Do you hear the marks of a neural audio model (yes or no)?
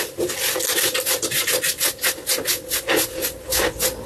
no